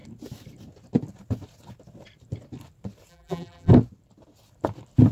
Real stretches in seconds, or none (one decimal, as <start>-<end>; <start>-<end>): 0.0-3.1; 3.7-5.1